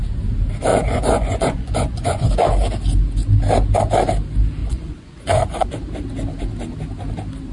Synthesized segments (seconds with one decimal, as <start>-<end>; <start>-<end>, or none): 0.7-2.3; 4.6-5.7